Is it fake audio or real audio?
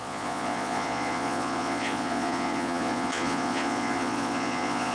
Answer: fake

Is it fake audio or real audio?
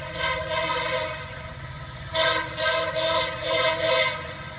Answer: fake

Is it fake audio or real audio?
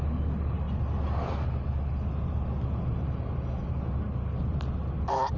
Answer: real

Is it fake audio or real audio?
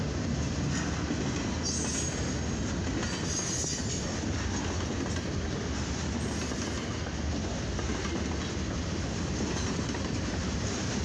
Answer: real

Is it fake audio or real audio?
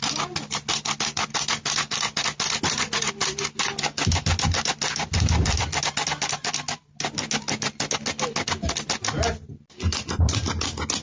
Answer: real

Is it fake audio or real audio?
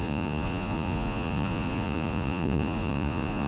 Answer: fake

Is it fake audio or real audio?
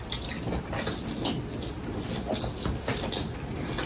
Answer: real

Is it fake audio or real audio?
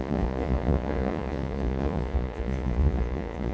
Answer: fake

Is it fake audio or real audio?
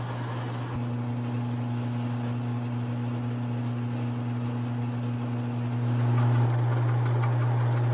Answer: real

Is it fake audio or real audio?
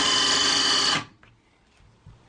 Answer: real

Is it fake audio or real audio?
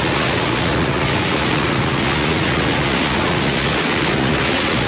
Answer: fake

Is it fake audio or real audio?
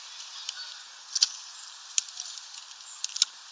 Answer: real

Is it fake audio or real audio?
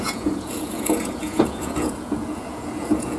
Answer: fake